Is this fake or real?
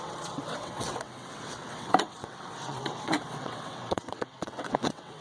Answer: fake